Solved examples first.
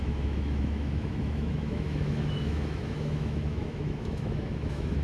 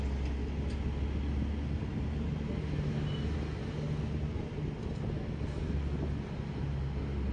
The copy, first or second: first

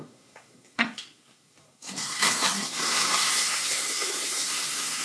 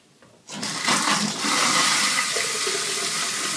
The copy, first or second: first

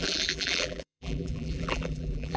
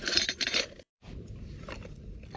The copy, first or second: first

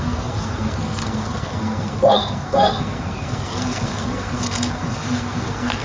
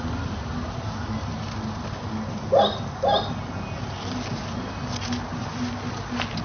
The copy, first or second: first